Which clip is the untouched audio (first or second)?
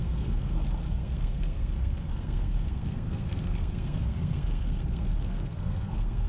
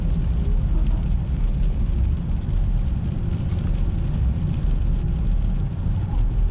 second